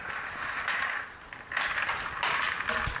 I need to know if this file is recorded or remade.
recorded